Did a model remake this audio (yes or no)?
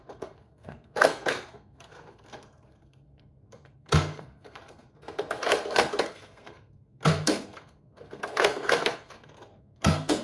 yes